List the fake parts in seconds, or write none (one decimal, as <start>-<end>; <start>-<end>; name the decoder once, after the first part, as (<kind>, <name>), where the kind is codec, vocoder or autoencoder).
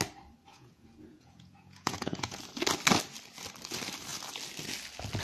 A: 0.5-2.4 (vocoder, Vocos)